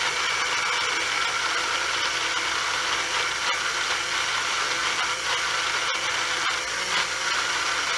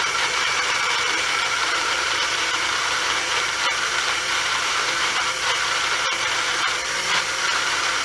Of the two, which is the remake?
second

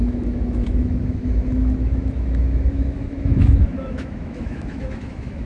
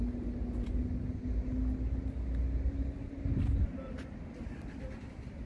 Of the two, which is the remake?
first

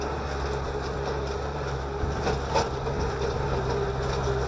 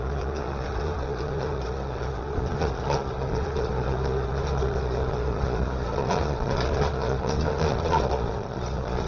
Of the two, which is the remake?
second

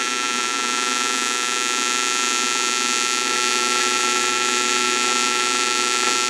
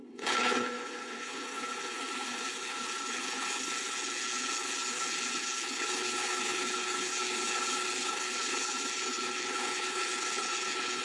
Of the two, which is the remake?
second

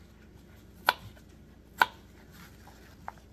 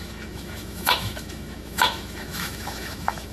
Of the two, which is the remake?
second